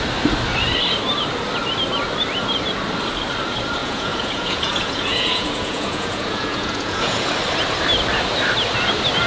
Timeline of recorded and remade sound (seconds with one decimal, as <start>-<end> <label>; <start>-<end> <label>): 0.0-3.8 recorded; 3.8-7.3 remade; 7.3-9.3 recorded